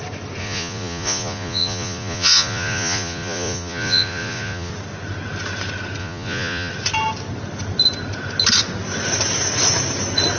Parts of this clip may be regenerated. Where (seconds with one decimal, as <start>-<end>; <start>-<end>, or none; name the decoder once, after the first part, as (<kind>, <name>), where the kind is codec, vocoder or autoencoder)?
0.4-4.7 (vocoder, Vocos); 6.0-6.7